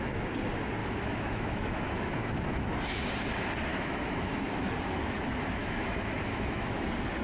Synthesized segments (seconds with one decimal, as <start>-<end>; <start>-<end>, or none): 0.8-2.7; 3.7-4.7; 5.6-6.8